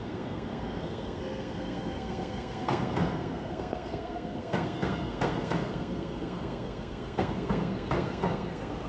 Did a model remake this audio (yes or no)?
yes